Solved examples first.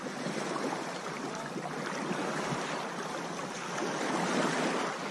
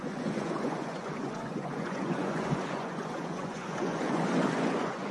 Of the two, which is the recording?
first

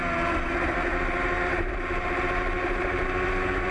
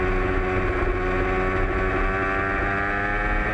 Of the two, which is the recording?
second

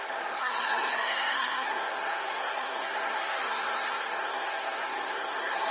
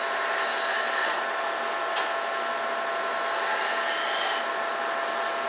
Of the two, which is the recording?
second